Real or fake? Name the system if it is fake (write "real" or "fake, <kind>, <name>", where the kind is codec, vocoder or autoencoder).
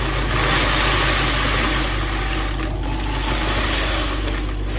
real